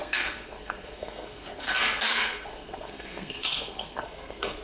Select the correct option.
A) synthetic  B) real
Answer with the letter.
A